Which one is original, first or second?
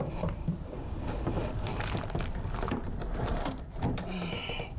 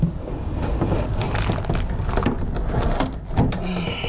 second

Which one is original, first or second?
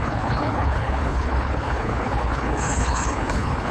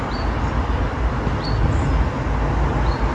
second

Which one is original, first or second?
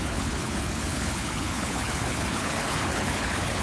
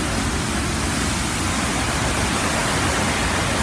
second